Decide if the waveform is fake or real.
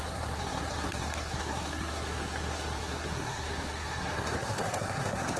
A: fake